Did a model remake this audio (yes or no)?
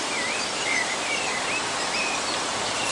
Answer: yes